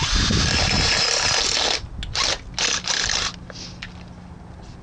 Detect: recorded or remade recorded